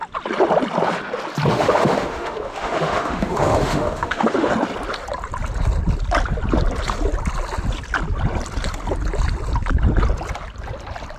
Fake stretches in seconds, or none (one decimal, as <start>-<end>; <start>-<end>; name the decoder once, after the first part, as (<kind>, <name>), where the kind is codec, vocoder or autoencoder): 1.5-4.5 (autoencoder, DAC-VAE)